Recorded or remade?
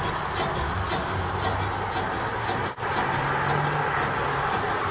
recorded